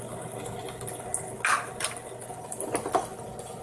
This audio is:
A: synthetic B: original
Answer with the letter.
B